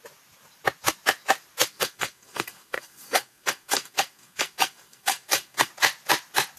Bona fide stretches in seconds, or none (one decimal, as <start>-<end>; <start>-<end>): 0.0-1.7; 5.7-6.6